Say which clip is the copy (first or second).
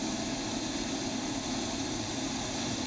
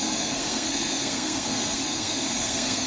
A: second